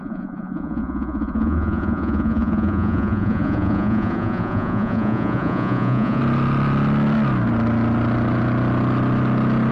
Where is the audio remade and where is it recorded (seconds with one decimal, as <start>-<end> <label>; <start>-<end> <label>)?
0.0-6.2 remade; 6.2-9.7 recorded